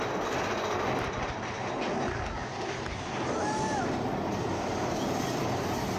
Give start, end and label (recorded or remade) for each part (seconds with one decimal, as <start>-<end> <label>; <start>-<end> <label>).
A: 0.0-6.0 recorded